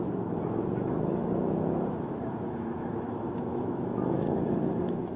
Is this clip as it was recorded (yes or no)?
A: no